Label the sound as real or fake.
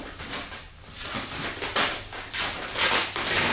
real